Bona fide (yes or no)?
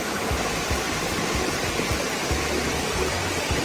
yes